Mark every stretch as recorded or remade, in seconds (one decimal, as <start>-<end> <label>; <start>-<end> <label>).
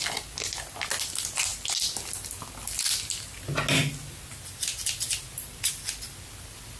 0.0-6.8 recorded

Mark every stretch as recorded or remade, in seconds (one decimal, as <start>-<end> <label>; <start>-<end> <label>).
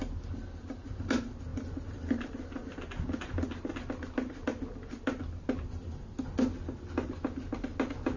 0.0-8.2 recorded